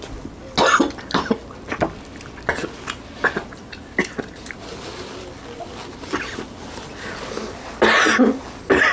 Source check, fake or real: real